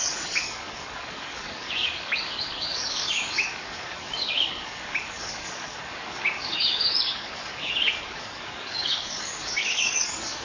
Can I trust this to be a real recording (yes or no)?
no